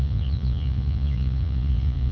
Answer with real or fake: fake